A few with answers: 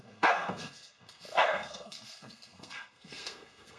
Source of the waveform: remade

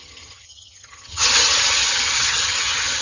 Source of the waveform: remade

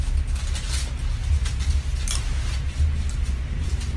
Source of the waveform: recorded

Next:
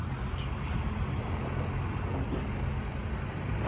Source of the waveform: recorded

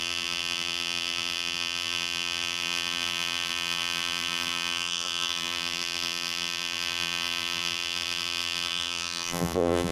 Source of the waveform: remade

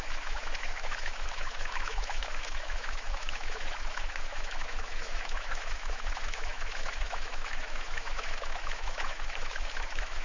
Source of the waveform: remade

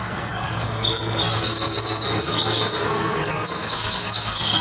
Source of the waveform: remade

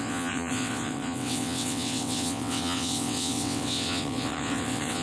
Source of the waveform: remade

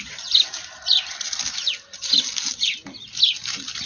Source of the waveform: recorded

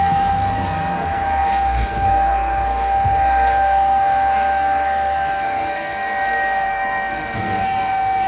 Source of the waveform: remade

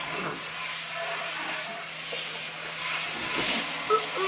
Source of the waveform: recorded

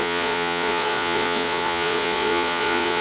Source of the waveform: remade